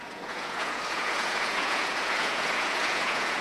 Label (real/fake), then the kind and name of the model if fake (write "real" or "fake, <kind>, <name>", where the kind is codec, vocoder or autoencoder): fake, vocoder, Vocos